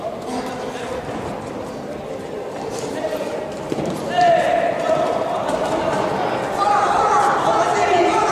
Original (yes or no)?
yes